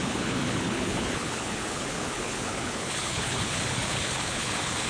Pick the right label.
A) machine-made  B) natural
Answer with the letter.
A